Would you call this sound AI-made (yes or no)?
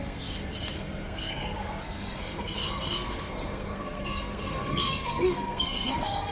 yes